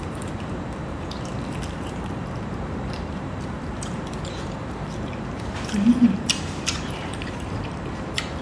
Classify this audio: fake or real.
fake